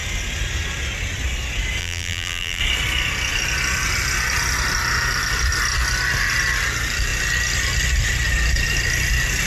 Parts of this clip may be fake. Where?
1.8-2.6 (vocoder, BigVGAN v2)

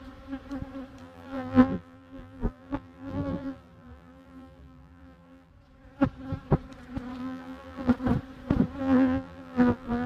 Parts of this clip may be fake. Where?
1.0-5.5 (vocoder, BigVGAN v2); 7.2-7.9; 8.8-10.1

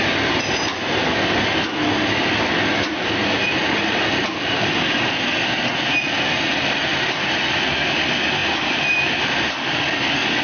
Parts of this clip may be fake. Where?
2.7-4.7 (vocoder, BigVGAN v2); 6.5-7.7; 8.4-9.8

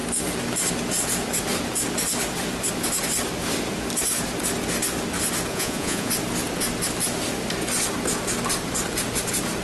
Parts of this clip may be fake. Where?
5.5-6.1 (vocoder, Vocos)